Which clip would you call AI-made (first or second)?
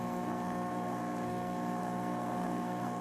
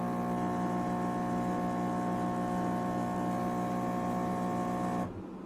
first